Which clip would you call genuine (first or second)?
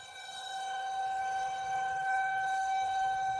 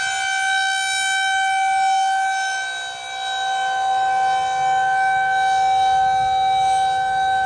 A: second